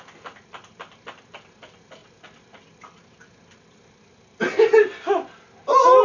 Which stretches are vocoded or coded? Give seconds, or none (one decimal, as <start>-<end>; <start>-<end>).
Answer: none